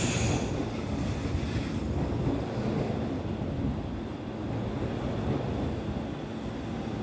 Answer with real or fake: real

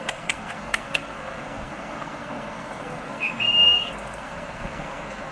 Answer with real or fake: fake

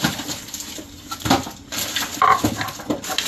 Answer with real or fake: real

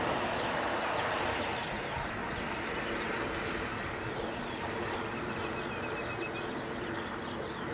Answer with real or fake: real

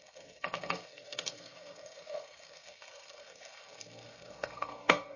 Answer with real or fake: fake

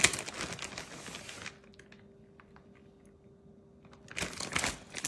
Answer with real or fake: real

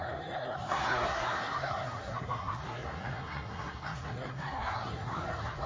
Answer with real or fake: fake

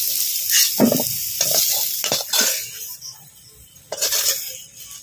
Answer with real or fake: real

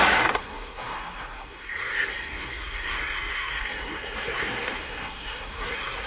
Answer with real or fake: fake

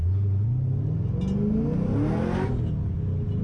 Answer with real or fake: real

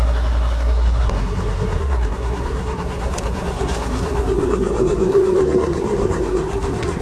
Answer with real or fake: fake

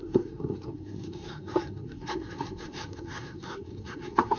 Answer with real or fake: fake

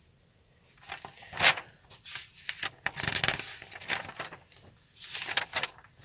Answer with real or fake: real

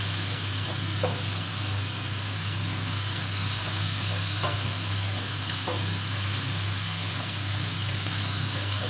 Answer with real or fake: fake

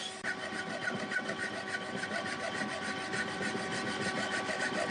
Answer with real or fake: real